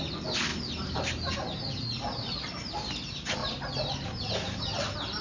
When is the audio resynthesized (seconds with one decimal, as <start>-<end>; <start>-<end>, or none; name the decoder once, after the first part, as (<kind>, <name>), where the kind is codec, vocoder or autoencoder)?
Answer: 0.5-1.3 (vocoder, BigVGAN v2); 3.4-4.2